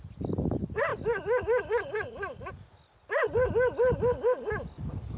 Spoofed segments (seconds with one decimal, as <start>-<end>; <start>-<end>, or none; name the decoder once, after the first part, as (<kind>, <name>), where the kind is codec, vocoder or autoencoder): none